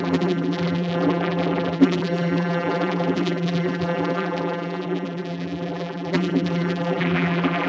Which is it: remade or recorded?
remade